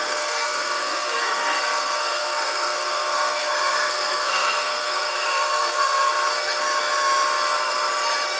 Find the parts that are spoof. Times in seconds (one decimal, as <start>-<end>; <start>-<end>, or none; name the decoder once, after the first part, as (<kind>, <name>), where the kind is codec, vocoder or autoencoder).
0.0-6.1 (codec, SNAC)